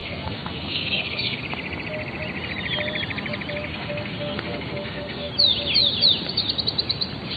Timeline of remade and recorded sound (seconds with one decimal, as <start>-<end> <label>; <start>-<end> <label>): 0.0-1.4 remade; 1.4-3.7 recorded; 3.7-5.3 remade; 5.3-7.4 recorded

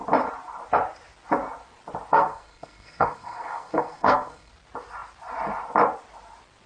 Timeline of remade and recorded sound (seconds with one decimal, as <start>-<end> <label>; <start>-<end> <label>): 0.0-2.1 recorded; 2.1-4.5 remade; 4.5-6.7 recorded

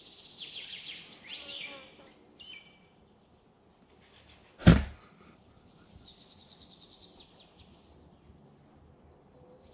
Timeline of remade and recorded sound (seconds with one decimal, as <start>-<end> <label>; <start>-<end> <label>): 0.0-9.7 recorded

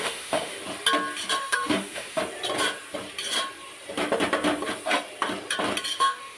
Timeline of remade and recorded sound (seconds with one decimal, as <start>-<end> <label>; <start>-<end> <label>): 0.0-0.6 remade; 0.6-1.4 recorded; 1.4-2.2 remade; 2.2-6.0 recorded; 6.0-6.4 remade

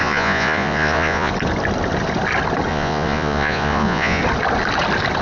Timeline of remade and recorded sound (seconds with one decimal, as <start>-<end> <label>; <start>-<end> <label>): 0.0-1.3 remade; 1.3-2.7 recorded; 2.7-4.2 remade; 4.2-5.2 recorded

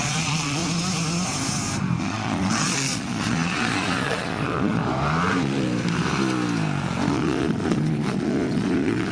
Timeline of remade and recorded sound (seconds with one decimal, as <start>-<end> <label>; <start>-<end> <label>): 0.0-0.6 remade; 0.6-2.0 recorded; 2.0-4.8 remade; 4.8-7.1 recorded; 7.1-9.1 remade